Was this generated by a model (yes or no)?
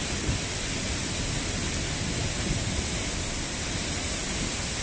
no